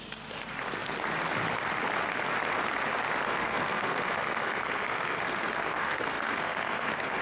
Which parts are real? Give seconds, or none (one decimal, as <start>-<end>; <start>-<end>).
0.0-3.3